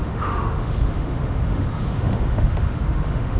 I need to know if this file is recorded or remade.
remade